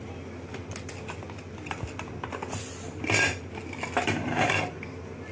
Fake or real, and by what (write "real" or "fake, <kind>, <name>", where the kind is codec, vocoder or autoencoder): real